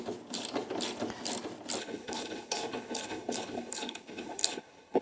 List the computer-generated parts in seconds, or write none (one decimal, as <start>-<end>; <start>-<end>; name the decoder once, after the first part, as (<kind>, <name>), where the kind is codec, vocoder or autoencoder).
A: 1.8-5.0 (codec, HILCodec)